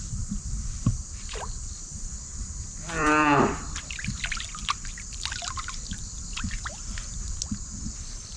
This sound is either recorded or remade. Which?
remade